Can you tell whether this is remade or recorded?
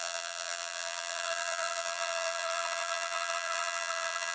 remade